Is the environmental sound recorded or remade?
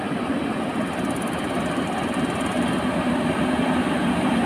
recorded